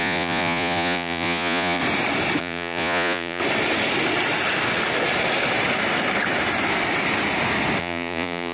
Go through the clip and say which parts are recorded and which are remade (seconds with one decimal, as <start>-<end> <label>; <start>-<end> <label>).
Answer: 0.0-1.8 remade; 1.8-2.4 recorded; 2.4-3.4 remade; 3.4-7.8 recorded; 7.8-8.5 remade